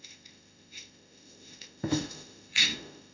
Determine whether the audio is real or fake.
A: fake